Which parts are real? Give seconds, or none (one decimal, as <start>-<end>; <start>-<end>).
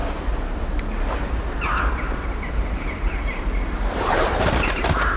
none